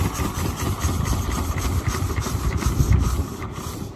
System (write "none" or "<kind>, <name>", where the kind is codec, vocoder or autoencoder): none